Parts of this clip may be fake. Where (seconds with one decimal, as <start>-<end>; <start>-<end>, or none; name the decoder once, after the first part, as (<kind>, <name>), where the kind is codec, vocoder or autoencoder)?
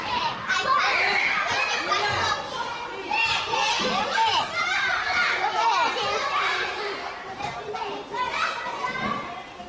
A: 2.7-3.4 (vocoder, BigVGAN v2); 3.8-7.7